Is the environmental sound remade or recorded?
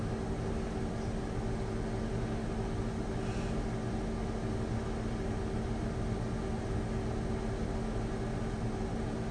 recorded